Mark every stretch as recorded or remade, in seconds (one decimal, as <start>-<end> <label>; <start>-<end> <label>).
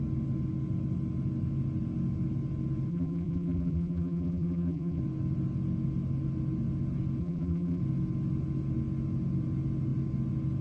0.0-2.9 recorded; 2.9-5.0 remade; 5.0-7.2 recorded; 7.2-7.8 remade; 7.8-10.6 recorded